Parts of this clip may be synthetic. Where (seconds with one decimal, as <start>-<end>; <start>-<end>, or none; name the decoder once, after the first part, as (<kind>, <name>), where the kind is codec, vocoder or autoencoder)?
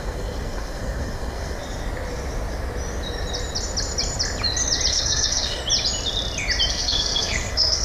0.0-1.6 (codec, SNAC); 4.9-5.6; 6.7-7.8